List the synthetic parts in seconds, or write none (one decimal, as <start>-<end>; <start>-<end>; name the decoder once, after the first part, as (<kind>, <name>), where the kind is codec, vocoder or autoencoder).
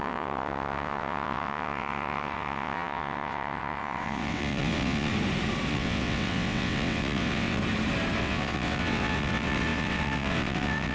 0.0-5.1 (vocoder, WaveNeXt); 5.7-7.6; 8.2-10.9